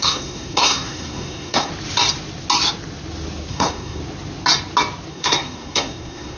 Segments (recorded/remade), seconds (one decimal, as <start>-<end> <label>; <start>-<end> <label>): 0.0-1.7 remade; 1.7-3.5 recorded; 3.5-4.0 remade; 4.0-5.1 recorded; 5.1-6.4 remade